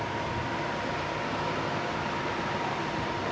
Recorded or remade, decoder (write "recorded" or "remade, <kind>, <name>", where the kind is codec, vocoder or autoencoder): recorded